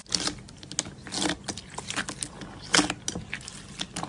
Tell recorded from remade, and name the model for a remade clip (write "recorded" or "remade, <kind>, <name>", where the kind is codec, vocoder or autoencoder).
recorded